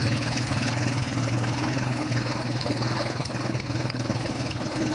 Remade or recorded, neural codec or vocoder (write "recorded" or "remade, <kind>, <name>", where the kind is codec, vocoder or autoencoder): remade, codec, HILCodec